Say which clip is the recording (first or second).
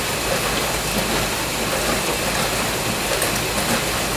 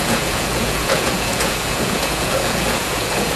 first